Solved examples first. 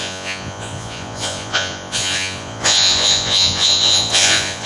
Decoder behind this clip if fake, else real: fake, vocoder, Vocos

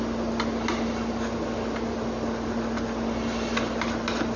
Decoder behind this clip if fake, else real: real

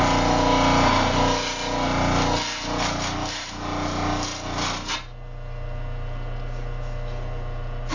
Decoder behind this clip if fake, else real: real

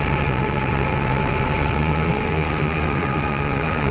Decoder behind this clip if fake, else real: fake, vocoder, WaveNeXt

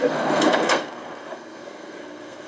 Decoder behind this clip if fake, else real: fake, codec, SNAC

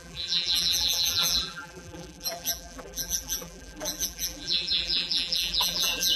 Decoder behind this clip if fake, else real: fake, vocoder, BigVGAN v2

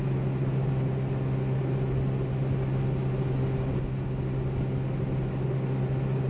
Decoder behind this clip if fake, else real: real